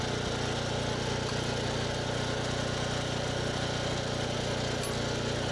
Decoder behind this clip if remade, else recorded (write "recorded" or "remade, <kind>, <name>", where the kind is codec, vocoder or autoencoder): recorded